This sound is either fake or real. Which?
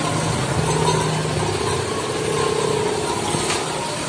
real